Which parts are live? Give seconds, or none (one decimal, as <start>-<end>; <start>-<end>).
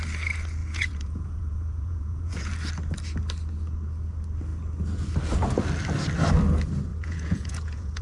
0.0-0.6; 2.5-6.9